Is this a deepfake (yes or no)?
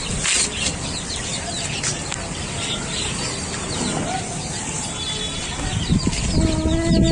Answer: no